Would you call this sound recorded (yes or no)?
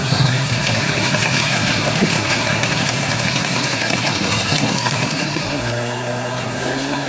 no